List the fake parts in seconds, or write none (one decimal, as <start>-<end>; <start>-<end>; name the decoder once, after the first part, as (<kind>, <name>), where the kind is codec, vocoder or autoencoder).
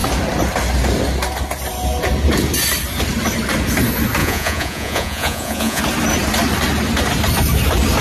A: 4.2-5.8 (vocoder, Vocos)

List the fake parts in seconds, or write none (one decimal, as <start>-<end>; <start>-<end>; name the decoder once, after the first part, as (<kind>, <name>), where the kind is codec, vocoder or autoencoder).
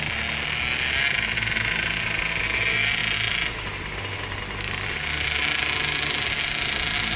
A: none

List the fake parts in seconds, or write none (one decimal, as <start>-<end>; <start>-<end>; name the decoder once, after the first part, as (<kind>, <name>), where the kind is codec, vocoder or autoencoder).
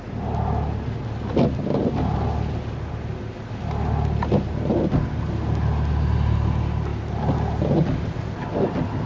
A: none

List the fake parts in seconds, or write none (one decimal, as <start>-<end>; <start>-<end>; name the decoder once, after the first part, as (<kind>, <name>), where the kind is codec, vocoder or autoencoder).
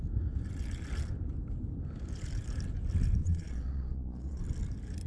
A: 3.2-4.4 (vocoder, Vocos)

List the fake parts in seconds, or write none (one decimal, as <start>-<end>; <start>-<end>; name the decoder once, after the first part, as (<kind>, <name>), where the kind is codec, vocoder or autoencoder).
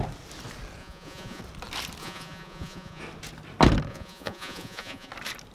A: 0.8-1.4 (vocoder, Vocos); 2.0-3.0; 3.9-5.1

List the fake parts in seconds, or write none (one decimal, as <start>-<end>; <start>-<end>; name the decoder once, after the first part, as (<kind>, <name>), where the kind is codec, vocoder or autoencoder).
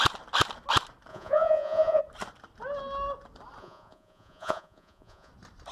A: 1.1-2.0 (vocoder, Vocos); 3.6-5.3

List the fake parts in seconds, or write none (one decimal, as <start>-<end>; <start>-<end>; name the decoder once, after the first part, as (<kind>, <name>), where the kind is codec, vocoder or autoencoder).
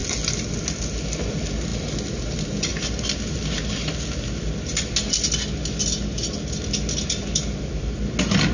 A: none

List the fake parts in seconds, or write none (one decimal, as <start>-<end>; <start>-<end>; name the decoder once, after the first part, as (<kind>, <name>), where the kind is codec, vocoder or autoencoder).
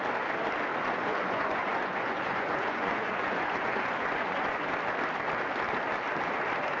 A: 0.7-4.6 (vocoder, Vocos)